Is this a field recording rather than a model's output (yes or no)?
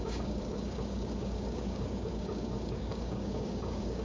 no